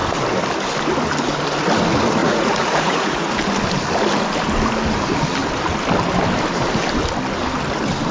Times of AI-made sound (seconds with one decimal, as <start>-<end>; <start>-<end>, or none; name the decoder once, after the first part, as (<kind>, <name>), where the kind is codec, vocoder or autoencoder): 2.2-3.3 (vocoder, Vocos)